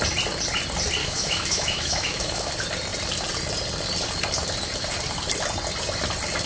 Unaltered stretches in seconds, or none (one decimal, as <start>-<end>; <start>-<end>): 0.0-1.0; 2.5-6.5